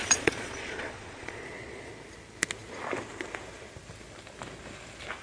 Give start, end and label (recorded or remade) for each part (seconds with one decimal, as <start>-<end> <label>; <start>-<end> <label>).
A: 0.0-1.9 remade; 1.9-5.2 recorded